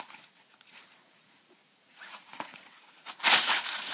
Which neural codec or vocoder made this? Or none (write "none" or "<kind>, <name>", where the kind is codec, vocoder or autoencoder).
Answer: vocoder, Vocos